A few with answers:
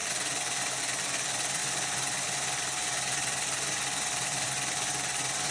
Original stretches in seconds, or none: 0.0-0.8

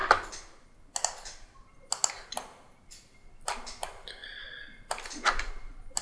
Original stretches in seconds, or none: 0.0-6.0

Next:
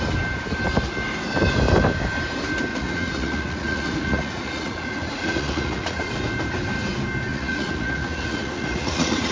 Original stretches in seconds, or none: 0.0-2.7; 6.1-7.3

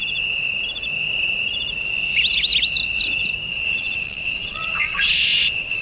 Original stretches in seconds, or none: 0.0-3.5

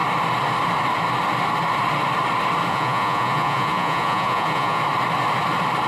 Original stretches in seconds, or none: 0.0-2.7; 4.8-5.9

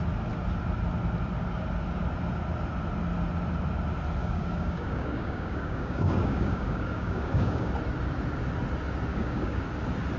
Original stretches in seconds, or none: 0.0-4.2; 7.7-9.1; 9.6-10.2

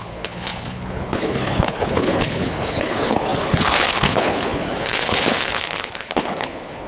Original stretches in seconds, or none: none